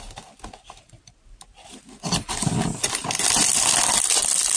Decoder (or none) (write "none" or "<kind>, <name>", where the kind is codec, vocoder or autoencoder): none